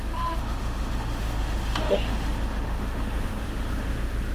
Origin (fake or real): fake